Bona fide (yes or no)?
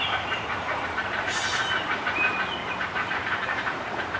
no